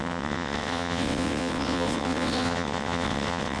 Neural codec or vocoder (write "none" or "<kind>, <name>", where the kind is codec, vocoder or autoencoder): vocoder, WaveNeXt